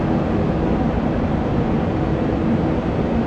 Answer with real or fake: real